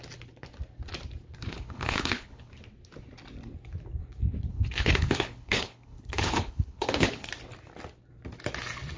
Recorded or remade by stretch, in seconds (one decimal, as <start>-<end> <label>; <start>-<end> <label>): 0.0-1.5 recorded; 1.5-2.5 remade; 2.5-4.5 recorded; 4.5-7.3 remade; 7.3-9.0 recorded